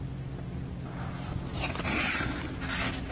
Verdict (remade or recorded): recorded